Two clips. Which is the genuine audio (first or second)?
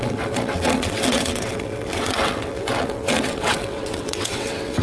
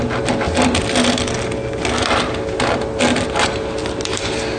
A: second